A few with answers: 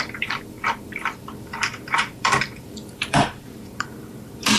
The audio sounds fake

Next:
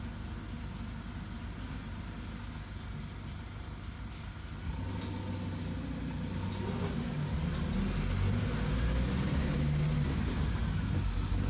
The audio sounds real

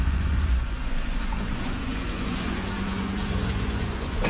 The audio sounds fake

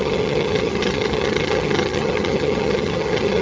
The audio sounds fake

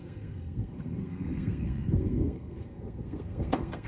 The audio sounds fake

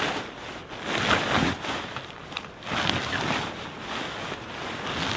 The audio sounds real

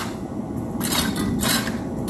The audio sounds real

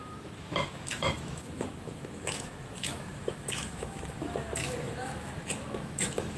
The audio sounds fake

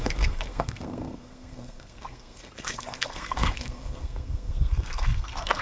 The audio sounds fake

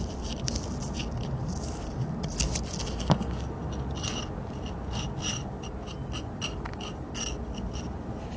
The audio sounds real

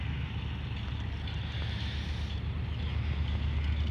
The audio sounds real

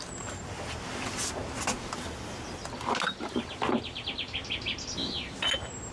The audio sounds real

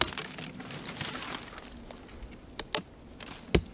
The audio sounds real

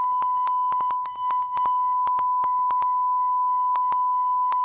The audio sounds fake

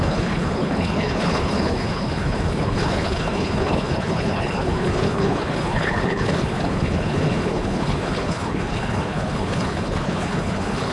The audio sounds fake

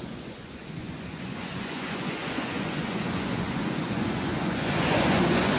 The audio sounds fake